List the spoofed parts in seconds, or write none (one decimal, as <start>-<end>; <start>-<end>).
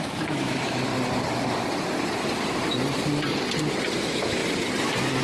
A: 0.0-0.9; 4.0-4.4